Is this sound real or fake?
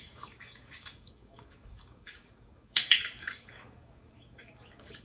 fake